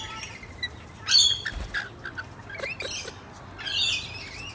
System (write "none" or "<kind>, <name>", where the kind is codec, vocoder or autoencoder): none